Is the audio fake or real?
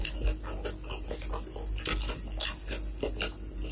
real